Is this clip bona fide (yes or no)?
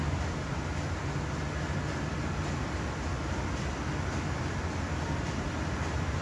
yes